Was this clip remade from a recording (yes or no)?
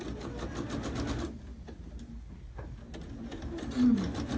no